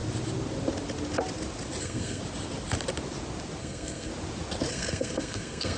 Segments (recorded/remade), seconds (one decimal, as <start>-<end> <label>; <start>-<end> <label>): 0.0-1.8 recorded; 1.8-2.2 remade; 2.2-3.6 recorded; 3.6-4.1 remade; 4.1-4.7 recorded; 4.7-5.8 remade